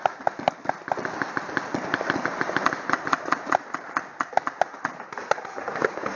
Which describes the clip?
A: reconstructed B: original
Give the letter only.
B